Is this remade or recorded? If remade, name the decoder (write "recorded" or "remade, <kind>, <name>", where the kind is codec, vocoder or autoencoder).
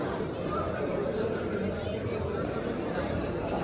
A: remade, vocoder, BigVGAN v2